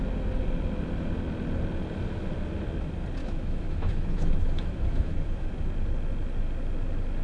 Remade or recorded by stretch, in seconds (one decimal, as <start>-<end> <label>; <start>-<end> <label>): 0.0-3.2 recorded; 3.2-5.5 remade; 5.5-7.2 recorded